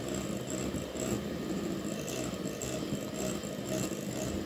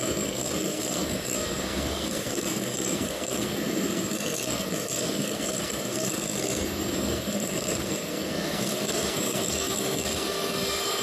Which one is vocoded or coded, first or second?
second